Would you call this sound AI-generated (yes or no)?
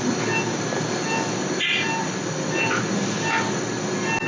no